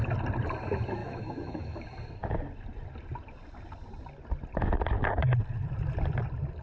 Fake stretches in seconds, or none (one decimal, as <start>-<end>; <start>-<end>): 1.0-1.8